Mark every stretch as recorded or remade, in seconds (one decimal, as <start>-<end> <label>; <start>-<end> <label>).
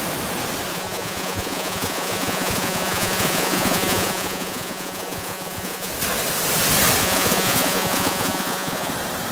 0.0-0.7 recorded; 0.7-5.9 remade; 5.9-7.0 recorded; 7.0-8.9 remade; 8.9-9.3 recorded